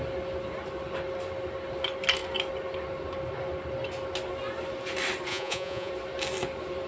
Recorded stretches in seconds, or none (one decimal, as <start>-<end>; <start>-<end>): 0.0-5.3; 5.9-6.9